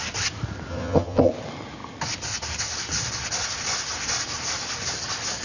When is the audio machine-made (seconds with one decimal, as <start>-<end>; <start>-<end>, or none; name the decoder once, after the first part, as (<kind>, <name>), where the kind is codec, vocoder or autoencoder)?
0.7-1.3 (vocoder, HiFi-GAN)